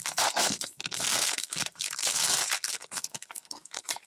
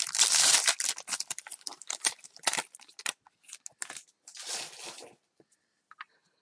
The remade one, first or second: first